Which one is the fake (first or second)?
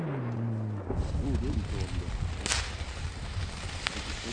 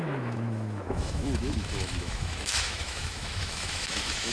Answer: second